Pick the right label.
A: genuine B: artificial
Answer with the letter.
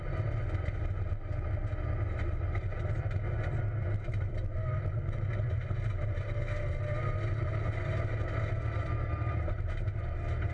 A